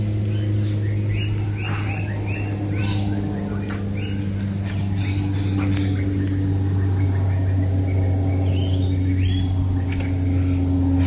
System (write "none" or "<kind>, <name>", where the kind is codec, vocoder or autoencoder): none